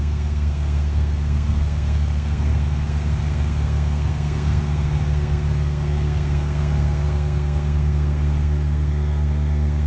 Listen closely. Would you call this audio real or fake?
fake